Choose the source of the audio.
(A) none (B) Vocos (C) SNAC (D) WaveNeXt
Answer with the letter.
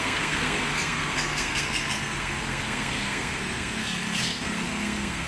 C